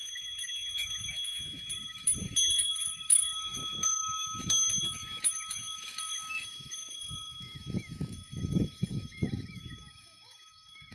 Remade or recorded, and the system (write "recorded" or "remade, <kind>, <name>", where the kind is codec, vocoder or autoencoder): remade, autoencoder, DAC-VAE